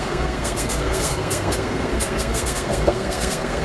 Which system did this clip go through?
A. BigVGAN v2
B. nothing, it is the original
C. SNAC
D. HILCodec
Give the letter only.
C